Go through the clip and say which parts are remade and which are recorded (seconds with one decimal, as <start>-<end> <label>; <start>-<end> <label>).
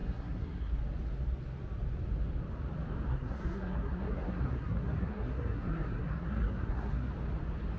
0.0-0.8 remade; 0.8-3.1 recorded; 3.1-7.1 remade; 7.1-7.8 recorded